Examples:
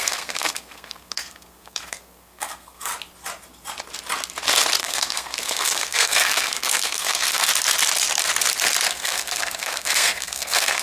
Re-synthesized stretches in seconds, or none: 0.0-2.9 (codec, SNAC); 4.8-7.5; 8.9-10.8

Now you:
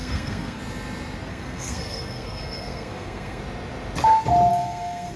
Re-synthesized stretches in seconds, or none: 0.0-0.6 (codec, SNAC); 1.3-3.4; 4.5-5.2

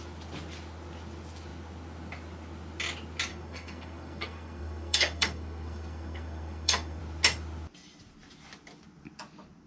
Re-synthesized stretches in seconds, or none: 3.3-7.0 (codec, SNAC)

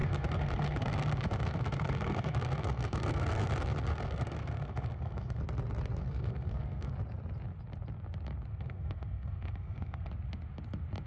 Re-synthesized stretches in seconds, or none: 0.0-3.5 (codec, SNAC); 3.9-5.4; 6.0-6.9; 8.5-10.1

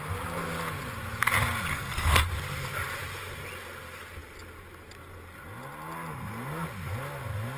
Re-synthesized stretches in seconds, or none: 1.7-2.2 (codec, SNAC)